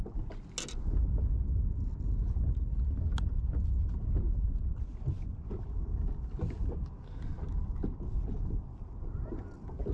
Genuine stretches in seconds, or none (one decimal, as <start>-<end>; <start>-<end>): 0.0-9.9